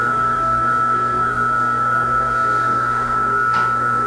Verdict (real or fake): fake